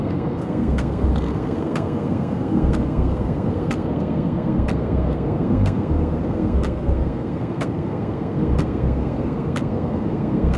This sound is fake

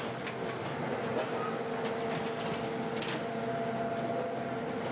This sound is real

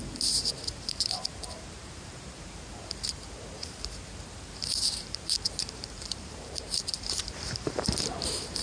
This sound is fake